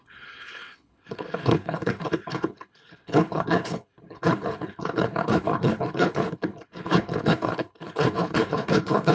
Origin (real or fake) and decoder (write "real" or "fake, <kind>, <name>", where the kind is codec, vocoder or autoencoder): fake, codec, HILCodec